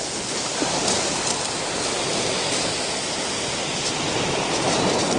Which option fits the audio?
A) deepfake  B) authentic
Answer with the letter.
B